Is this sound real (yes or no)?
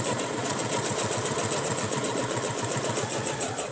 no